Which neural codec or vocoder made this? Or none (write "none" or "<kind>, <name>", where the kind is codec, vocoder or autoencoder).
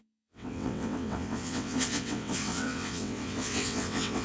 vocoder, WaveNeXt